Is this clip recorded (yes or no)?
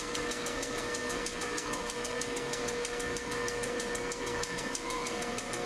no